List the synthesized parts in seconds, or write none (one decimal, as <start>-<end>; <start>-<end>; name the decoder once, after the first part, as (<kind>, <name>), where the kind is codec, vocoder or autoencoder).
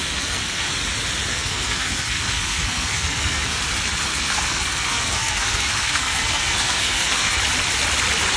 0.0-0.7 (codec, SNAC); 1.3-3.6; 4.1-7.4